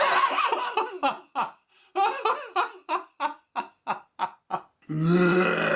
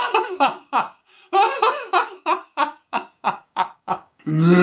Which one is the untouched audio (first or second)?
first